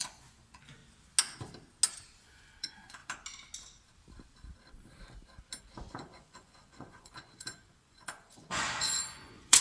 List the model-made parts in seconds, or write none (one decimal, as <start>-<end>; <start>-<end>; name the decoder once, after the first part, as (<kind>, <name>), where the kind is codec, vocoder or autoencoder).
0.0-0.8 (vocoder, Vocos); 2.2-3.0; 5.6-9.6